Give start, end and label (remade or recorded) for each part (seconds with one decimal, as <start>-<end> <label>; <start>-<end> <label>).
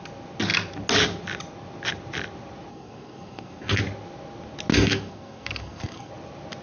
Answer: 0.0-2.7 recorded; 2.7-3.8 remade; 3.8-4.7 recorded; 4.7-6.1 remade; 6.1-6.6 recorded